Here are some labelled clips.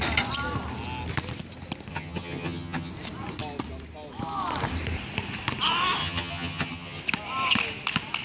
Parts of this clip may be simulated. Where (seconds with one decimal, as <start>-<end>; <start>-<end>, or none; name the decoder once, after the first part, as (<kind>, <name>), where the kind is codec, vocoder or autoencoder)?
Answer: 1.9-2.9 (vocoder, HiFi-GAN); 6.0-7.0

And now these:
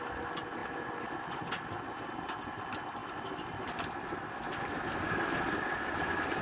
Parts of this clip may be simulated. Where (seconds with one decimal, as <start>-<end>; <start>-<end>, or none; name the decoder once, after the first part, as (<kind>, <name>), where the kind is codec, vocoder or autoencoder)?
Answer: none

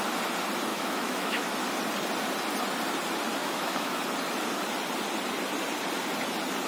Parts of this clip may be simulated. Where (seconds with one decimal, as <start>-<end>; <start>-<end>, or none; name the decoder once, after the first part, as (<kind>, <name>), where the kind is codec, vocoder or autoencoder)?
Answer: 0.7-1.5 (autoencoder, DAC-VAE); 3.4-4.0

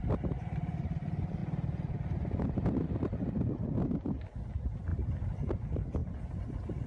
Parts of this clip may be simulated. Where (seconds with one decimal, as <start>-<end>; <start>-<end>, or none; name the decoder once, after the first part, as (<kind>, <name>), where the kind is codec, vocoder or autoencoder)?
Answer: 0.0-6.9 (vocoder, BigVGAN v2)